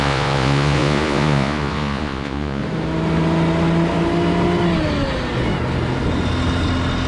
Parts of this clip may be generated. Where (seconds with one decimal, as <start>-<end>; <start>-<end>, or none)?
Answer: 0.0-2.6